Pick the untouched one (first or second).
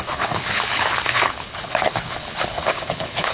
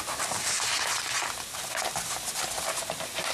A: second